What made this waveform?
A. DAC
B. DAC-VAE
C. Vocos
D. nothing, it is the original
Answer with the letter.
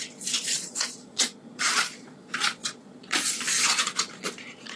C